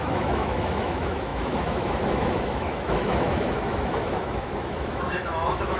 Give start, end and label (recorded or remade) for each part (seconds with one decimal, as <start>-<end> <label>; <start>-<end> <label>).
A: 0.0-5.8 remade